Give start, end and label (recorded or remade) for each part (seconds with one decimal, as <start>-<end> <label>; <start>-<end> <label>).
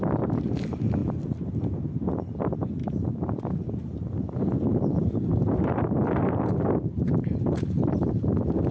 0.0-2.8 recorded; 2.8-7.9 remade; 7.9-8.7 recorded